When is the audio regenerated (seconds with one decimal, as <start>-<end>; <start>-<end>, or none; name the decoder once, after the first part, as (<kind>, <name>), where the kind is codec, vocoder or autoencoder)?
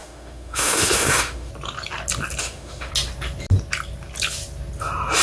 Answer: 0.0-1.5 (autoencoder, DAC-VAE); 2.4-2.9